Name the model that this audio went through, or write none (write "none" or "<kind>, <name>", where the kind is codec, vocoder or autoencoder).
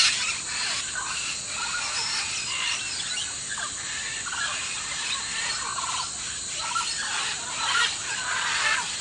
none